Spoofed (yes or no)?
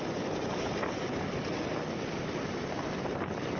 no